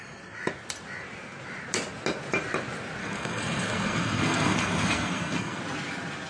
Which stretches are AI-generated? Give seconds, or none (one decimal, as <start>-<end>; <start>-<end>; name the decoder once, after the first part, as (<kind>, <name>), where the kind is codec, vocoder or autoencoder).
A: 3.0-5.6 (codec, SNAC)